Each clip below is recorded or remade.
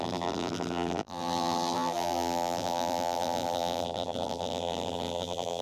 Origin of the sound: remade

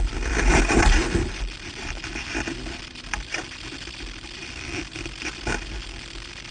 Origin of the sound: remade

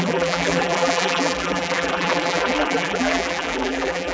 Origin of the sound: remade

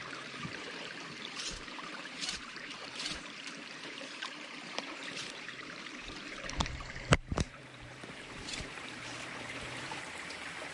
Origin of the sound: remade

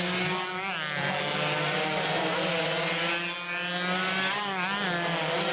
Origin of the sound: recorded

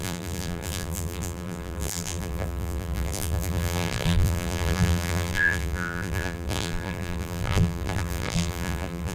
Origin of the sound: remade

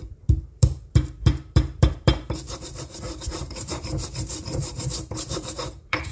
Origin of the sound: remade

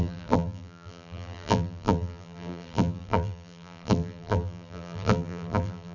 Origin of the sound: remade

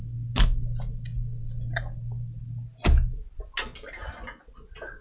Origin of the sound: recorded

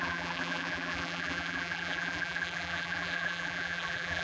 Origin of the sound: remade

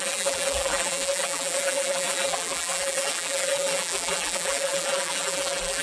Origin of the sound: remade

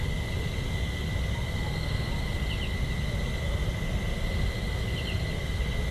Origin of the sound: recorded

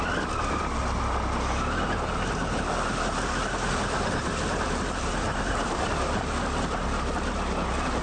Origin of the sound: recorded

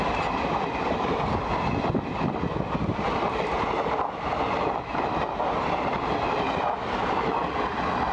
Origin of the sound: recorded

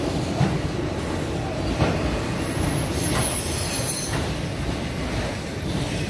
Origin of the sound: recorded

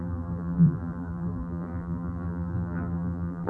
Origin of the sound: remade